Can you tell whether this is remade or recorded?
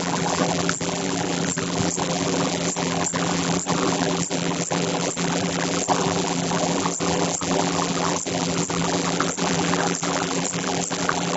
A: remade